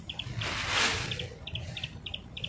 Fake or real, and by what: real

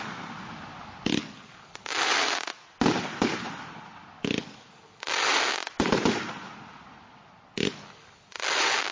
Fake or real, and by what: real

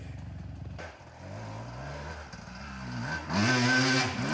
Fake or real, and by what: real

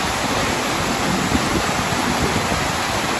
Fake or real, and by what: real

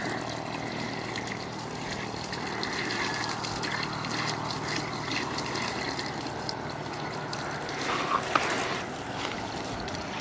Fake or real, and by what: real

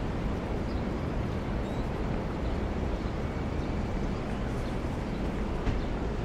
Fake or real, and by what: real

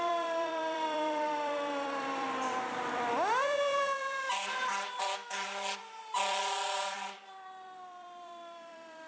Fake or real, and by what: fake, vocoder, BigVGAN v2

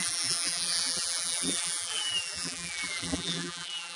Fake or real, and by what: fake, vocoder, BigVGAN v2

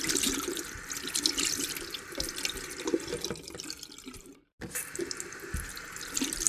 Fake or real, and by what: real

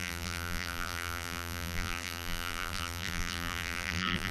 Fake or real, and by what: fake, vocoder, BigVGAN v2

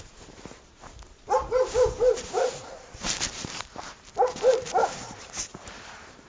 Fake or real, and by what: fake, vocoder, BigVGAN v2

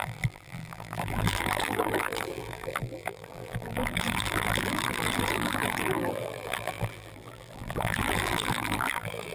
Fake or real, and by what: fake, vocoder, BigVGAN v2